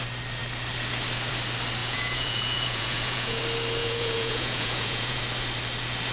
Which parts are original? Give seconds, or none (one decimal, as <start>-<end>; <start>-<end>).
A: 0.0-1.8; 3.4-3.8; 5.2-6.1